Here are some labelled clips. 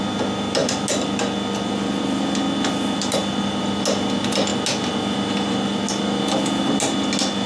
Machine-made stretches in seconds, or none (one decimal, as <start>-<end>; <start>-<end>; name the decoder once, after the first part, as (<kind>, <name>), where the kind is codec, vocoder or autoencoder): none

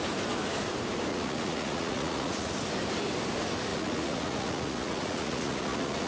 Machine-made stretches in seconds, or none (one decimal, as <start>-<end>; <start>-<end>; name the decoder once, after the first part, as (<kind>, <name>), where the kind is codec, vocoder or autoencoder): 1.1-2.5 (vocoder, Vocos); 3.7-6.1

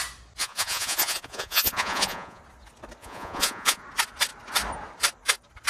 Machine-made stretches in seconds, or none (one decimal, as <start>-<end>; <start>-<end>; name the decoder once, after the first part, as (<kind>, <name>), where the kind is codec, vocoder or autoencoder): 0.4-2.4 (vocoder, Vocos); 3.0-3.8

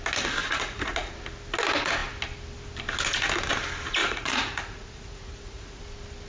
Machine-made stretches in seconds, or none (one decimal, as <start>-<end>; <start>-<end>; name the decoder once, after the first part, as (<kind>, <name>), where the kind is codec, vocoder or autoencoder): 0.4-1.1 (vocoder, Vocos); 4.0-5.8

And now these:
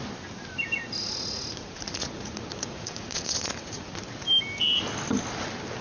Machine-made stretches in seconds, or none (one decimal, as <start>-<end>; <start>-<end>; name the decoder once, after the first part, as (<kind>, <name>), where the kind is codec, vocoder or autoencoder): 1.0-4.0 (vocoder, Vocos)

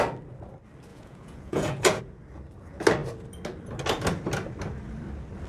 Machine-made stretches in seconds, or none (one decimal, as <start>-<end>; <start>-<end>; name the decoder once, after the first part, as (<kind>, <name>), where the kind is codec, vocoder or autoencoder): 0.9-2.0 (vocoder, Vocos)

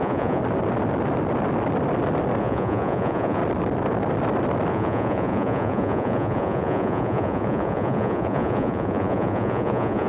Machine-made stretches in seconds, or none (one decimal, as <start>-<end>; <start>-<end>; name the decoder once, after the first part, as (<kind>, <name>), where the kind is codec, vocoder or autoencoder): 0.0-0.4 (vocoder, Vocos); 2.4-3.4; 4.7-10.1

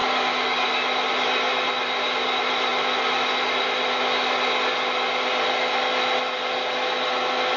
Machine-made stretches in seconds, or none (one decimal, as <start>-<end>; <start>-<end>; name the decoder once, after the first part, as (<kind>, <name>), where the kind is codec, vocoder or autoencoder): none